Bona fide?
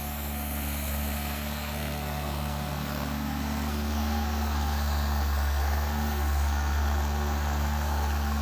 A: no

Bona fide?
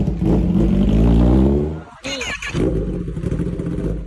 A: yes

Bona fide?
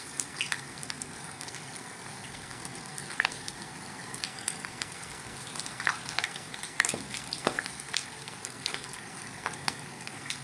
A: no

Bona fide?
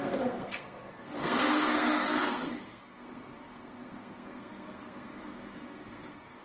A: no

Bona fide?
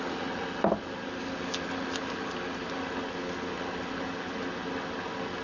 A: yes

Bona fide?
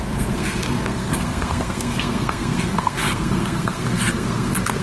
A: no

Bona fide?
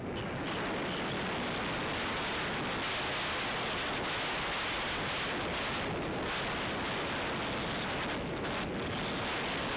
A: yes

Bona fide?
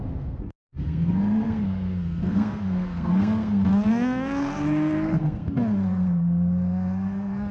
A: no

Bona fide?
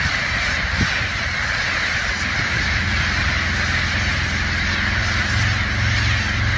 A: yes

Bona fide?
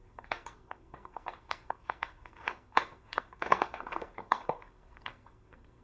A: no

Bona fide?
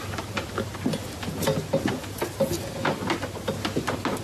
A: yes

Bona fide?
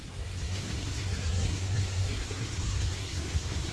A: no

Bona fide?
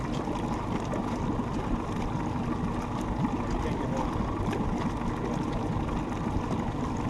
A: yes